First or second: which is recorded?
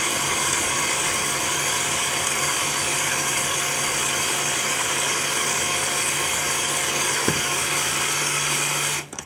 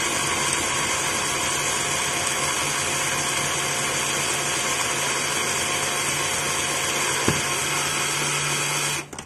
second